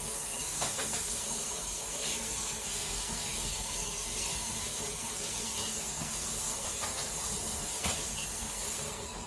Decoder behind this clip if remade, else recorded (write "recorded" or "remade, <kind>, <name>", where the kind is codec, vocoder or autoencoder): remade, codec, SNAC